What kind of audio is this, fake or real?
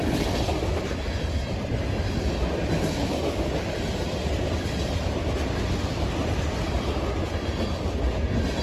real